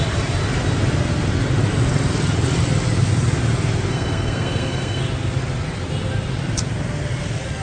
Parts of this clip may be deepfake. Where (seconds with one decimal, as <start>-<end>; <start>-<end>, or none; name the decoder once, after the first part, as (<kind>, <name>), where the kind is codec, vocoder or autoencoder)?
3.9-5.0 (codec, SNAC)